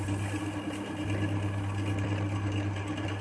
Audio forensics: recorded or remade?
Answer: recorded